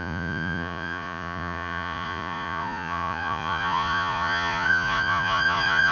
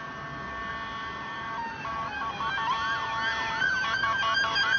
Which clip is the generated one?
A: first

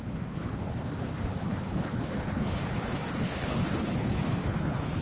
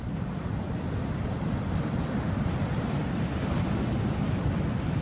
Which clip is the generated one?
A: first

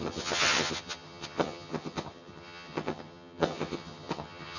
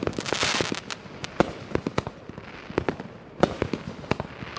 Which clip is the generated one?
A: first